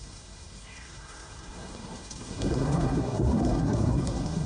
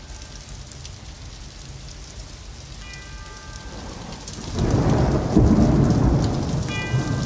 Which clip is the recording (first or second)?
second